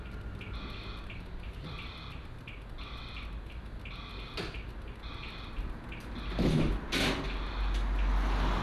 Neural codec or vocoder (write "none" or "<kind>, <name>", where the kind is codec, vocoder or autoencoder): none